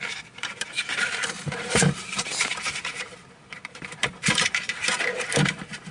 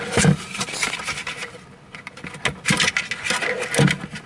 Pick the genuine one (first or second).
second